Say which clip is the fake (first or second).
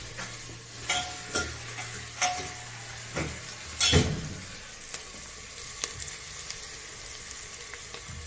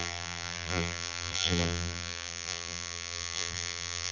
second